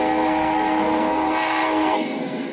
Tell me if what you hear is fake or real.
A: fake